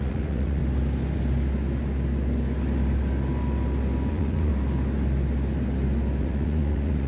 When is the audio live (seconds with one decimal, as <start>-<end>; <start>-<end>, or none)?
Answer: 0.6-4.1; 4.5-6.2